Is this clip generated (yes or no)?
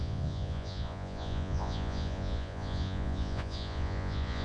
yes